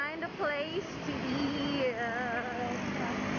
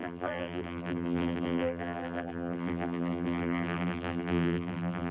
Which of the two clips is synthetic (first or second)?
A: second